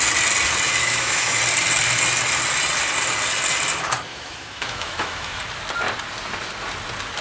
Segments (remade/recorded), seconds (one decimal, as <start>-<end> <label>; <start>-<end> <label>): 0.0-0.8 recorded; 0.8-1.4 remade; 1.4-4.1 recorded; 4.1-5.4 remade; 5.4-7.2 recorded